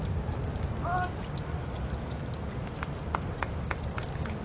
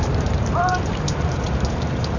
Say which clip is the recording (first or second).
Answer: first